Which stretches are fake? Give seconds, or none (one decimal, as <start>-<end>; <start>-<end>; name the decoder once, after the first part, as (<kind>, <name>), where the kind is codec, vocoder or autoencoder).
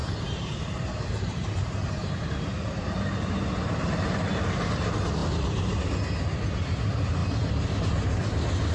0.0-4.7 (vocoder, BigVGAN v2); 5.2-5.9